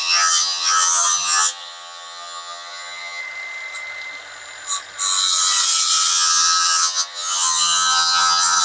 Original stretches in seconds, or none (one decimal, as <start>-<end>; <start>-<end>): 3.2-6.1